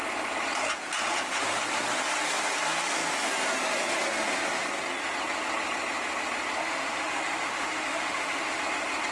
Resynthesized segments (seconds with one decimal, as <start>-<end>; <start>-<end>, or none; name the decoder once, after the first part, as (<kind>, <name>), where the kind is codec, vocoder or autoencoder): 6.6-8.6 (autoencoder, DAC-VAE)